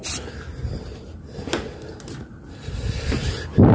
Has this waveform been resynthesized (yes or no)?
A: no